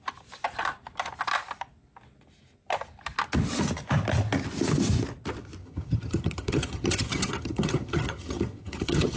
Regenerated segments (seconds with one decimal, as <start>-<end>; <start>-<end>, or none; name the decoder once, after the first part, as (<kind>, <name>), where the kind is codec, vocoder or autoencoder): 5.6-9.2 (vocoder, HiFi-GAN)